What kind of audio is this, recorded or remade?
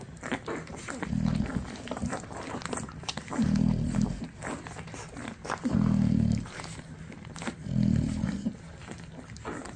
recorded